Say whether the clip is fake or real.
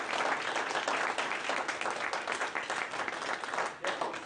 real